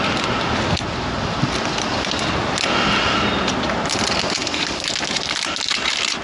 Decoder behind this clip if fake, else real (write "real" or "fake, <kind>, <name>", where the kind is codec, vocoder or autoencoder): real